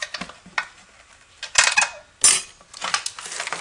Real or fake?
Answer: real